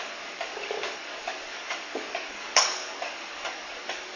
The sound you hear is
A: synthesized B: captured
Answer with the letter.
A